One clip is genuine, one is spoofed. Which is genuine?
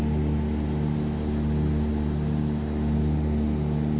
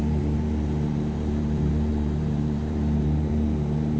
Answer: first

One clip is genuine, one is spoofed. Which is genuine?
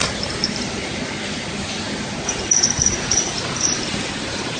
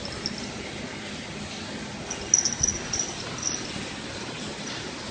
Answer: second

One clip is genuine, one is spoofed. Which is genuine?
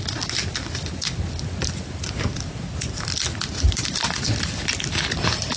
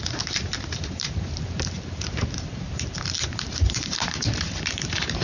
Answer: first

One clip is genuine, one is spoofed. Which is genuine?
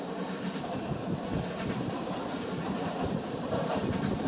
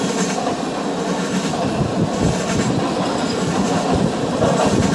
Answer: second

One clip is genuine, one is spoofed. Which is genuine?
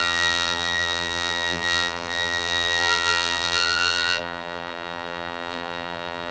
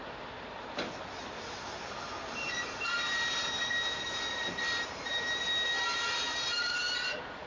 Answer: second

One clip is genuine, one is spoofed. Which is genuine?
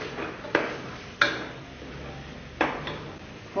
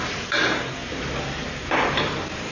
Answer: first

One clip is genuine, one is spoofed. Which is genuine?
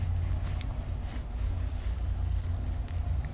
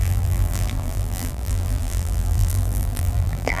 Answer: first